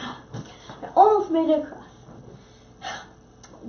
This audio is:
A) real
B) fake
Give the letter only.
A